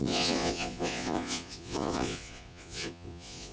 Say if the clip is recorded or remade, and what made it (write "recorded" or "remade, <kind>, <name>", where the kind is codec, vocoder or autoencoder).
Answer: remade, vocoder, Vocos